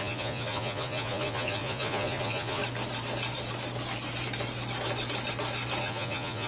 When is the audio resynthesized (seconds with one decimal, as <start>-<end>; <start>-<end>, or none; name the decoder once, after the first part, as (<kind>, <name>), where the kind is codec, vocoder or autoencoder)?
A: 0.0-2.6 (vocoder, Vocos); 5.8-6.5